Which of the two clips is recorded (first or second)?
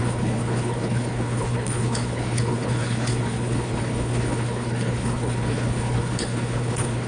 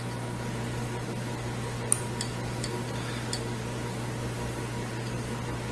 second